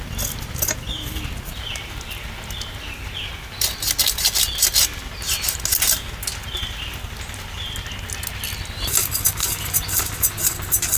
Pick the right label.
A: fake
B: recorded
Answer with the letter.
B